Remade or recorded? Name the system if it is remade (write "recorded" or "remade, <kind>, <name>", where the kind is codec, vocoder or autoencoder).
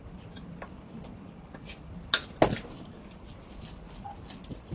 recorded